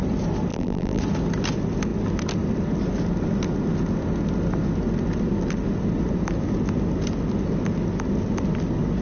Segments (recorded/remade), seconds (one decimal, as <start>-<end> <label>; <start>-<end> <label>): 0.0-0.5 recorded; 0.5-1.0 remade; 1.0-9.0 recorded